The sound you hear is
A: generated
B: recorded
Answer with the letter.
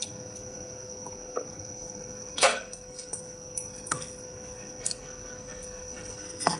A